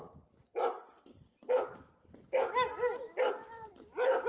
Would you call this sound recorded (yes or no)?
yes